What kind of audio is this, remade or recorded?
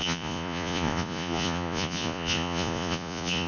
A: remade